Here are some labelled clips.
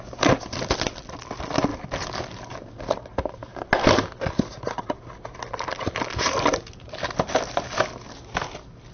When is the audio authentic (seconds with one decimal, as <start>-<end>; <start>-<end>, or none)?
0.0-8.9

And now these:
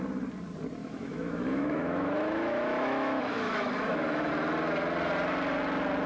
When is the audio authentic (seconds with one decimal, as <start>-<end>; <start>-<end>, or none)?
0.0-0.8; 4.3-6.1

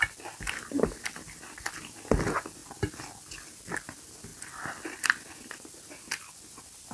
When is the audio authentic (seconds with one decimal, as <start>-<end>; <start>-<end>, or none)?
0.0-6.9

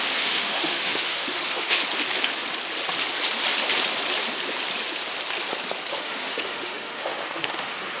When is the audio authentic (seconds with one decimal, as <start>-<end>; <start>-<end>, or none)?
1.8-5.9